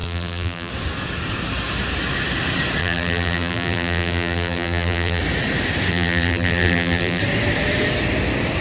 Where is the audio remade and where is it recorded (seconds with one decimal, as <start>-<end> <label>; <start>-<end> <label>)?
0.0-0.7 remade; 0.7-2.8 recorded; 2.8-5.2 remade; 5.2-5.9 recorded; 5.9-7.2 remade; 7.2-8.6 recorded